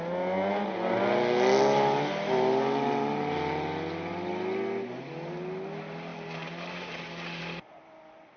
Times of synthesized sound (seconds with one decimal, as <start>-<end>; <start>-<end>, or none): 6.1-7.4